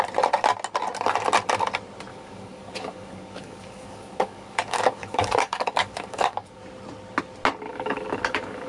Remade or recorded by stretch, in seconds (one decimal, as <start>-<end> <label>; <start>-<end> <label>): 0.0-2.1 recorded; 2.1-6.6 remade; 6.6-7.7 recorded; 7.7-8.7 remade